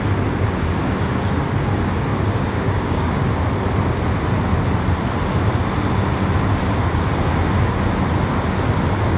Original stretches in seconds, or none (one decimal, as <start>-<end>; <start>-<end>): 0.0-2.1; 3.2-9.2